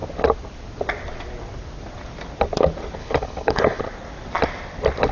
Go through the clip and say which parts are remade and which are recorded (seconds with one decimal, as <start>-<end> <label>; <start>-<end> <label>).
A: 0.0-3.0 recorded; 3.0-3.8 remade; 3.8-5.1 recorded